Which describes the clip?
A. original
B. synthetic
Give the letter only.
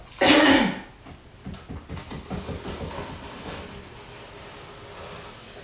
A